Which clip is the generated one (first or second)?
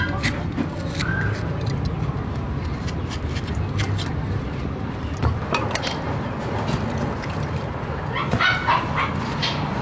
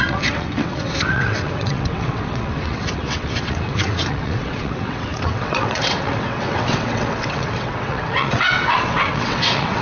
second